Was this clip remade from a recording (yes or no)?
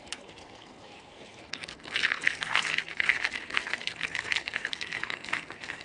yes